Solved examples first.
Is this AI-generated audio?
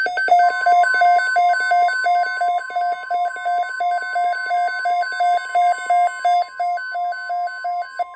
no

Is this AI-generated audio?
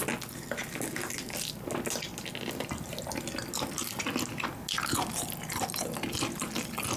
no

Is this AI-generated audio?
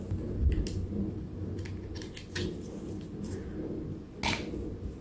no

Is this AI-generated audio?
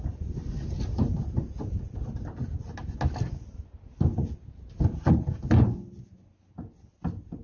no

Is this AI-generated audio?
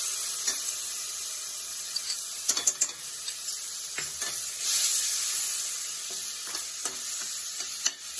no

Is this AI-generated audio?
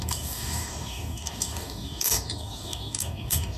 yes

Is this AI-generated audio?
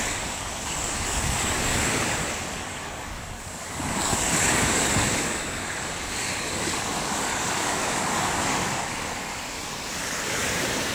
yes